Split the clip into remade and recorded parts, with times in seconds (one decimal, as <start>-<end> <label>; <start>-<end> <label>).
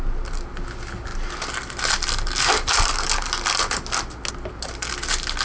0.0-5.4 recorded